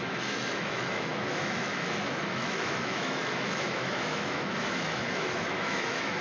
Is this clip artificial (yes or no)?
yes